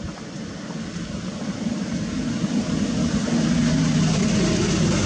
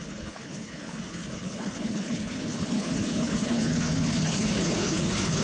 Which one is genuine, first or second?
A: first